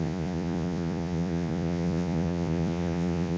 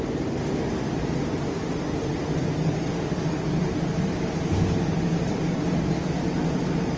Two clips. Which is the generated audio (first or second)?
first